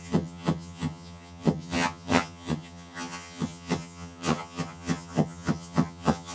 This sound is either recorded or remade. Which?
remade